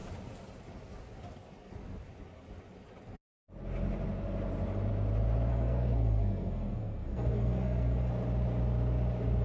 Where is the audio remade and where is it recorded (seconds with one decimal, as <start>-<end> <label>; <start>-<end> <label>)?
0.0-5.5 recorded; 5.5-8.1 remade; 8.1-9.4 recorded